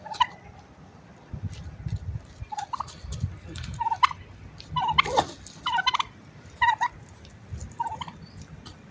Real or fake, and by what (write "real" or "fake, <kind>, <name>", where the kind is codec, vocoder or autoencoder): real